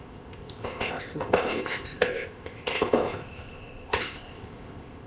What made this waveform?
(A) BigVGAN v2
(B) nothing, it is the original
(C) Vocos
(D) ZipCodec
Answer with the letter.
D